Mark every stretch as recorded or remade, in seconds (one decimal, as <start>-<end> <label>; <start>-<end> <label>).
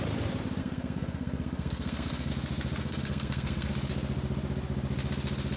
0.0-0.6 recorded; 0.6-2.3 remade; 2.3-2.8 recorded; 2.8-3.7 remade; 3.7-5.6 recorded